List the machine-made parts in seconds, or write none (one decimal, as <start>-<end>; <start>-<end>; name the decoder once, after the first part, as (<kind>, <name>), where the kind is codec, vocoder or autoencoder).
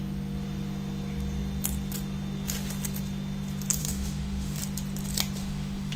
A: 3.8-4.6 (autoencoder, DAC-VAE); 5.4-6.0